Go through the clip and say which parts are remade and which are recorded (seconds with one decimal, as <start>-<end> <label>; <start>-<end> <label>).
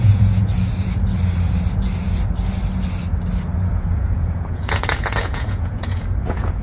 0.0-0.5 remade; 0.5-3.7 recorded; 3.7-6.6 remade